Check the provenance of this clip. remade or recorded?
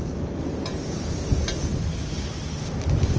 recorded